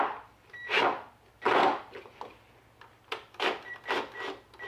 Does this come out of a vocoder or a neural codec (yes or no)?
no